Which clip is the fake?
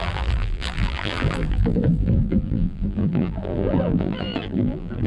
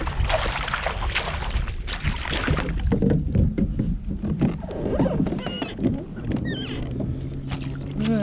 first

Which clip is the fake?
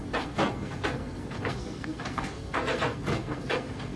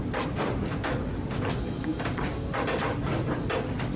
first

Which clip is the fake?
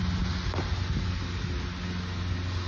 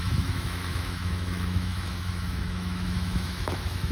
second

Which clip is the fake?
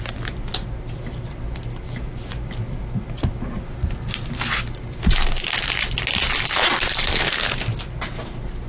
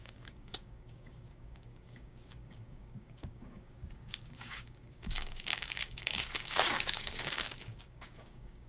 second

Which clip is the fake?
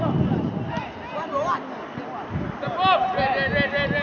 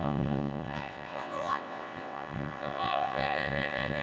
second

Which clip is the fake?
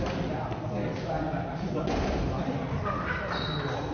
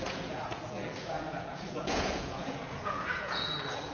second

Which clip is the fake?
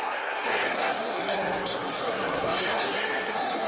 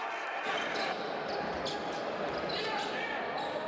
first